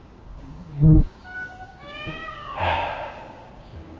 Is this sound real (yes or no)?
no